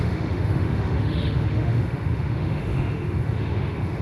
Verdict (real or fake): fake